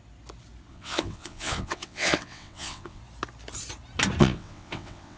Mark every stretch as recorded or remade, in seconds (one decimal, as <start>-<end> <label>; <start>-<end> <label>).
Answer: 0.0-0.7 recorded; 0.7-3.0 remade; 3.0-4.2 recorded; 4.2-5.2 remade